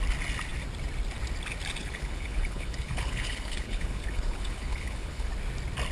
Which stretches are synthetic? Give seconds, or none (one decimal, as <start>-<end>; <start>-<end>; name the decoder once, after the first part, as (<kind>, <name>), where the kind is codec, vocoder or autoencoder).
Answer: 1.8-5.3 (codec, HILCodec)